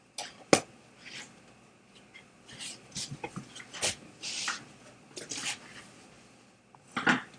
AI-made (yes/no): no